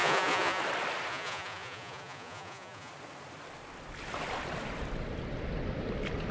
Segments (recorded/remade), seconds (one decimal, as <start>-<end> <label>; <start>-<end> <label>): 0.0-0.6 remade; 0.6-1.1 recorded; 1.1-2.9 remade; 2.9-6.3 recorded